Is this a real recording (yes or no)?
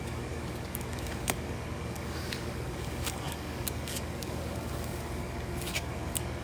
no